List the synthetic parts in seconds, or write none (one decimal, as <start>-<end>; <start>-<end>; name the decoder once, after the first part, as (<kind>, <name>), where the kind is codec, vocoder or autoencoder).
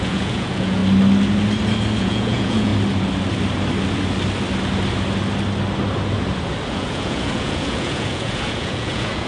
0.0-0.8 (vocoder, Vocos); 2.0-2.7; 6.7-9.3